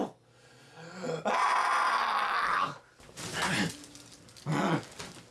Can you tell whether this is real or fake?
real